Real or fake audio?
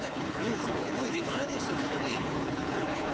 fake